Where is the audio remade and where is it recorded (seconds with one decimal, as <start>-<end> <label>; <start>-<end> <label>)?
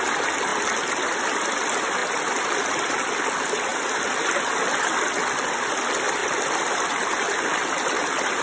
0.0-8.4 recorded